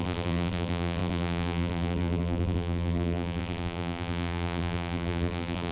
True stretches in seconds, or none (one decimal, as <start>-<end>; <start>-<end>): none